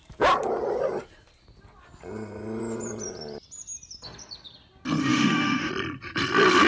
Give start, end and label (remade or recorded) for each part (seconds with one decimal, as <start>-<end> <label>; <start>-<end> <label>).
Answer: 0.0-5.0 recorded; 5.0-5.7 remade; 5.7-6.7 recorded